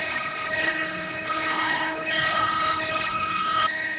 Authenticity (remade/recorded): remade